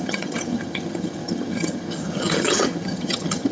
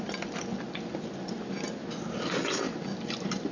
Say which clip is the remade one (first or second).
first